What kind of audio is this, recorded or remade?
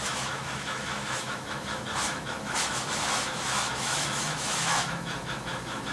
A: remade